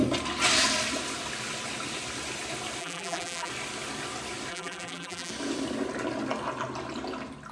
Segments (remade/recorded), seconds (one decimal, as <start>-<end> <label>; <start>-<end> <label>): 0.0-2.8 recorded; 2.8-3.5 remade; 3.5-4.5 recorded; 4.5-5.3 remade; 5.3-7.5 recorded

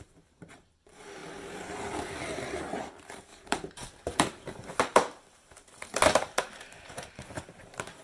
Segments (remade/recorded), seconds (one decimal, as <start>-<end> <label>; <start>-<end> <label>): 0.0-1.2 remade; 1.2-2.6 recorded; 2.6-8.0 remade

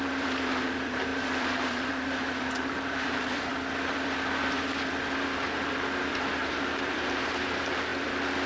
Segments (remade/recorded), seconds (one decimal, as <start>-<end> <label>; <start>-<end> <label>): 0.0-3.5 remade; 3.5-6.5 recorded; 6.5-7.9 remade; 7.9-8.5 recorded

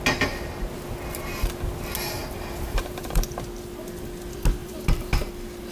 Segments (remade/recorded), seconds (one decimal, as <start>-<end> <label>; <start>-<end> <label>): 0.0-2.2 recorded; 2.2-3.2 remade; 3.2-4.6 recorded; 4.6-5.3 remade; 5.3-5.7 recorded

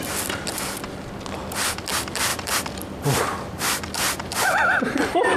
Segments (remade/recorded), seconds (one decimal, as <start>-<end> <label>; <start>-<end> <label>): 0.0-2.3 recorded; 2.3-5.4 remade

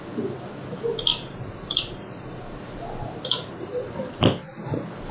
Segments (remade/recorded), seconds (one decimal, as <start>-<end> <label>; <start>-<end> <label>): 0.0-1.1 recorded; 1.1-4.2 remade; 4.2-5.1 recorded